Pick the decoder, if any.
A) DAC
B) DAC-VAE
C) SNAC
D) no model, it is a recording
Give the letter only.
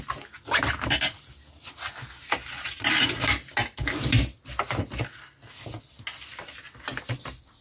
D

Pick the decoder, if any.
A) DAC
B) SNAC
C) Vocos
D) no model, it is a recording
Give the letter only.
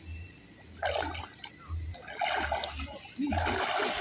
D